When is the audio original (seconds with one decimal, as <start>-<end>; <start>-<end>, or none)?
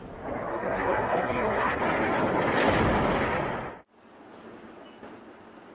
0.0-0.5; 1.8-5.7